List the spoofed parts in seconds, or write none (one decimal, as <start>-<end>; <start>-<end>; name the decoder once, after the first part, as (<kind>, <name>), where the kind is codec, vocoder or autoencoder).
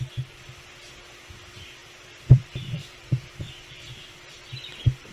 1.8-5.1 (vocoder, BigVGAN v2)